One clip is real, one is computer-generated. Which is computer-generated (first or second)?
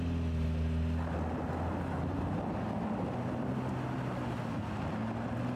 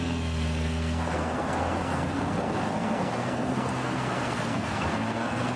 second